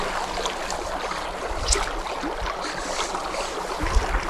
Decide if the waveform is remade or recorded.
recorded